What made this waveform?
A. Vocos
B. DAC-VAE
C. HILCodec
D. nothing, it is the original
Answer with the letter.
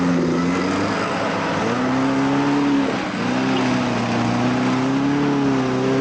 D